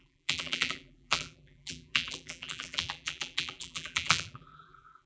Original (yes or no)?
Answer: no